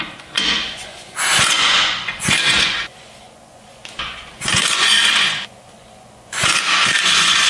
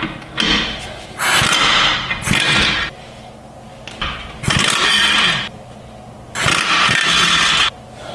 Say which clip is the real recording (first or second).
second